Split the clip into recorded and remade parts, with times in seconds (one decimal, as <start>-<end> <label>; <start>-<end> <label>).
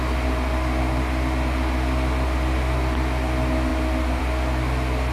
0.0-5.1 recorded